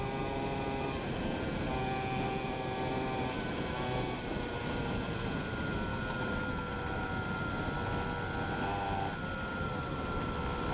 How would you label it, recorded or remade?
recorded